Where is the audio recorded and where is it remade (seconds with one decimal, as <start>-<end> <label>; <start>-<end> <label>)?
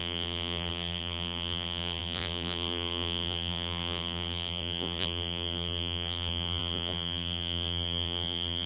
0.0-8.7 remade